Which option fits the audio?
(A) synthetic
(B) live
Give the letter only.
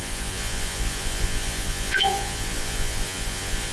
A